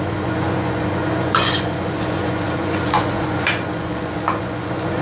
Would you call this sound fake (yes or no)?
yes